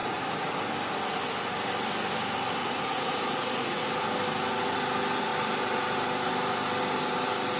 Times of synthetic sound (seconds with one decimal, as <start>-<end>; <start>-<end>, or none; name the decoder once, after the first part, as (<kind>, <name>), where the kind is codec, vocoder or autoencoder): 0.0-0.7 (vocoder, Vocos); 2.6-3.9